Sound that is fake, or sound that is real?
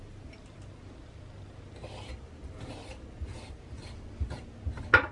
real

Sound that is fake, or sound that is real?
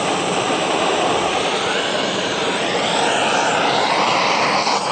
real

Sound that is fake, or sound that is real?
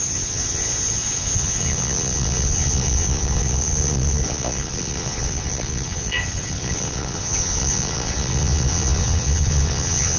fake